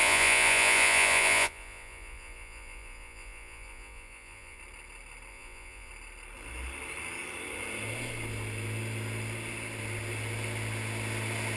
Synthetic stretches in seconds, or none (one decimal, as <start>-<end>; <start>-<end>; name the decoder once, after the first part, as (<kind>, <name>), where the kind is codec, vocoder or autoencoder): 0.0-4.6 (vocoder, Vocos); 5.3-5.9